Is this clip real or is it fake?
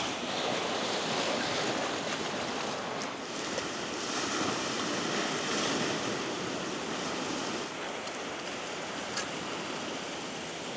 real